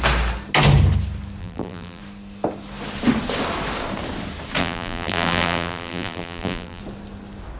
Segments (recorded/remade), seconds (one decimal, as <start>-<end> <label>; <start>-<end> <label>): 0.0-1.4 recorded; 1.4-2.0 remade; 2.0-4.6 recorded; 4.6-6.8 remade; 6.8-7.6 recorded

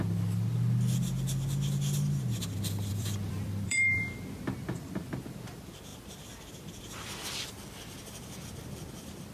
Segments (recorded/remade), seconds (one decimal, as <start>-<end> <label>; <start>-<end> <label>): 0.0-2.9 recorded; 2.9-4.0 remade; 4.0-9.3 recorded

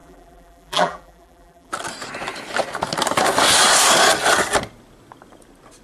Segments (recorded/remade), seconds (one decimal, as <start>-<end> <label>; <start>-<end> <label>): 0.0-1.7 remade; 1.7-5.8 recorded

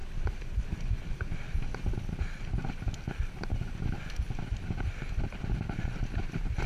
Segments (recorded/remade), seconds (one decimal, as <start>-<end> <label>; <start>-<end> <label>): 0.0-1.2 remade; 1.2-6.7 recorded

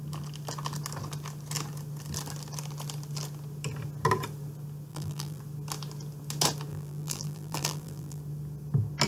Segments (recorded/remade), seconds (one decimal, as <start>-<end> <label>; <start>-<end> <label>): 0.0-4.9 recorded; 4.9-5.4 remade; 5.4-6.7 recorded; 6.7-8.2 remade; 8.2-9.1 recorded